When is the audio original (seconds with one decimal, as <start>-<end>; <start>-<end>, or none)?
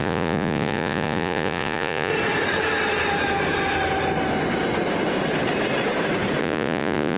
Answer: 2.1-6.4